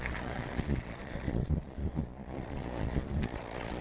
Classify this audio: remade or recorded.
remade